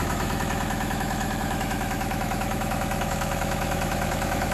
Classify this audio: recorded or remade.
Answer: remade